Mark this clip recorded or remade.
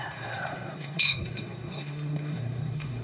remade